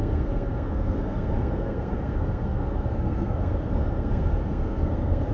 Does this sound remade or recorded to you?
remade